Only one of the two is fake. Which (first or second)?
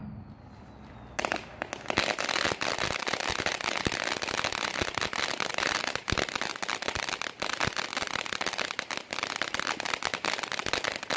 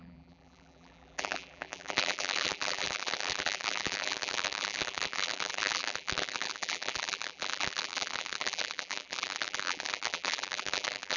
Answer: second